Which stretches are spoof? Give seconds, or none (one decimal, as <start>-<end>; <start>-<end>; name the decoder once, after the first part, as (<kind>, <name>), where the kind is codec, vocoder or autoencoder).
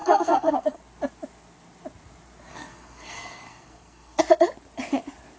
0.0-0.8 (codec, SNAC); 2.5-4.2